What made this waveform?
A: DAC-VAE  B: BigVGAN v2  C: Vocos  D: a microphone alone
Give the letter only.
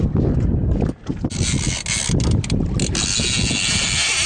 D